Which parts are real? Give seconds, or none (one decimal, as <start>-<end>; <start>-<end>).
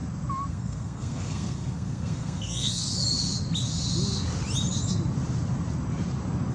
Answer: 0.0-0.5; 2.8-6.5